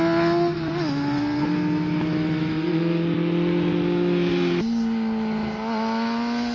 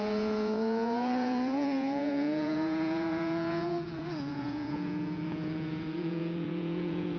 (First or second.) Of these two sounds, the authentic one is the first